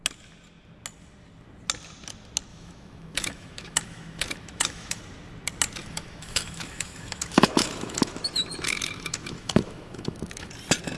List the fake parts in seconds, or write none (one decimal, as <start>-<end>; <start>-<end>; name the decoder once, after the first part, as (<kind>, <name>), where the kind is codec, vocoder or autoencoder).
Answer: 2.5-5.0 (autoencoder, DAC-VAE); 5.8-10.5